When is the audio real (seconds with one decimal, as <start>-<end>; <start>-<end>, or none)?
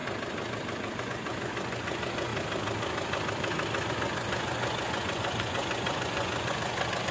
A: 0.0-1.0; 2.3-3.9